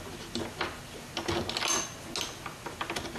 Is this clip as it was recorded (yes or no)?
yes